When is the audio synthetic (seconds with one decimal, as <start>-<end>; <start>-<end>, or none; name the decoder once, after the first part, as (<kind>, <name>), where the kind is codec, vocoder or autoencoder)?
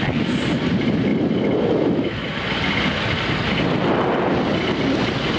none